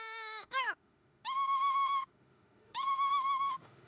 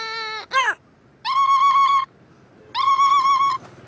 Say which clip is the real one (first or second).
second